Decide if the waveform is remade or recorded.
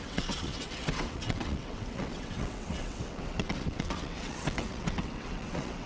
remade